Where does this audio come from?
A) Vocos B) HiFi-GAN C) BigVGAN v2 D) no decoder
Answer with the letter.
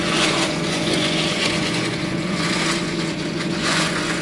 A